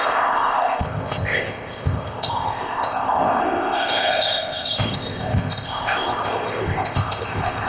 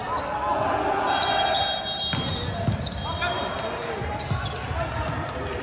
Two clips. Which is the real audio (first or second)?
second